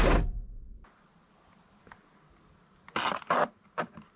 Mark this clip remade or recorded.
recorded